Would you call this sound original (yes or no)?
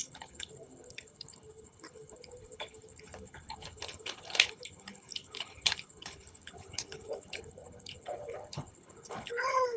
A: no